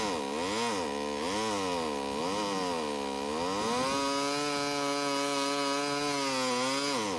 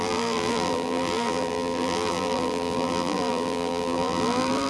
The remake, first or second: second